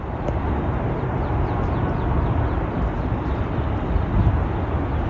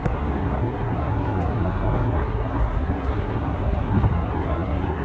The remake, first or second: second